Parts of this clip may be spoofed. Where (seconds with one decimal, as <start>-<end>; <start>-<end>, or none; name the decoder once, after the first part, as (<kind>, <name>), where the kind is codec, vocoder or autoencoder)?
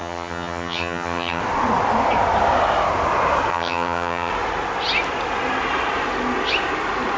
0.0-1.4 (vocoder, HiFi-GAN); 3.5-4.3